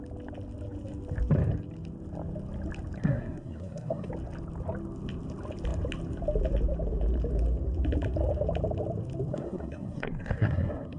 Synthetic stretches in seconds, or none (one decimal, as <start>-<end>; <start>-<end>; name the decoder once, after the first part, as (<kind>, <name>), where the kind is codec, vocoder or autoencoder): 3.0-4.1 (codec, SNAC); 9.3-11.0